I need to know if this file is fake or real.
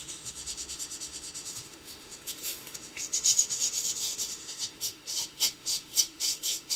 fake